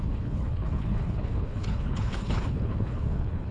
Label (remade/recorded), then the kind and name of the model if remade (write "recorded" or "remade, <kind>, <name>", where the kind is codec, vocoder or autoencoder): remade, codec, HILCodec